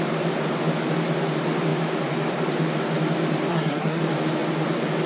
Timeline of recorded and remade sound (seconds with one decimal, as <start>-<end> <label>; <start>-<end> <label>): 0.0-3.5 recorded; 3.5-4.0 remade; 4.0-5.1 recorded